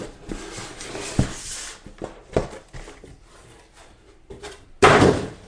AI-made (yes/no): no